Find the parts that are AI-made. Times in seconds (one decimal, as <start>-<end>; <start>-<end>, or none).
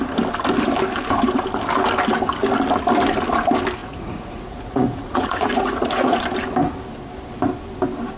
3.8-6.2